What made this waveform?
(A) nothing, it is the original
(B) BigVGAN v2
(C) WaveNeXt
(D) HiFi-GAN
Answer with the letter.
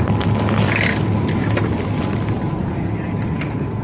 A